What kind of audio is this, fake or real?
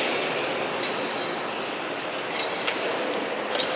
real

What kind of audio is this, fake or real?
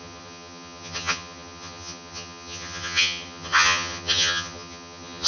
fake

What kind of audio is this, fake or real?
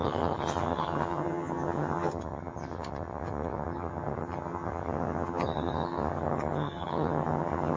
fake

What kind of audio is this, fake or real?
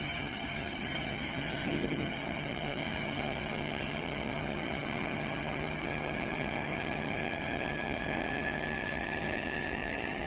fake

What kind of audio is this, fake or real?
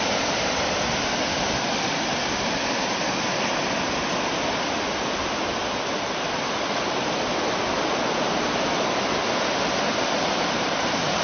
real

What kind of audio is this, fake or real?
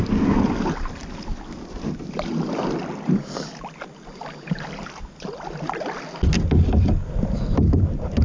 real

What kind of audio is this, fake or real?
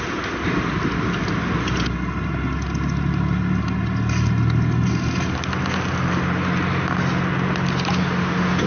real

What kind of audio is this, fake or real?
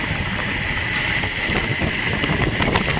real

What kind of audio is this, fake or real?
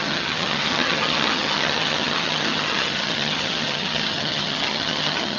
fake